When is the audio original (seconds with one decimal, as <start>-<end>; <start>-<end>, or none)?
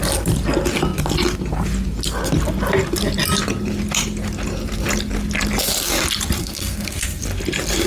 0.0-6.4; 7.2-7.9